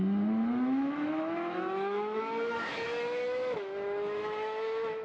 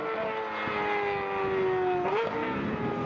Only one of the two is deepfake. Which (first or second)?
first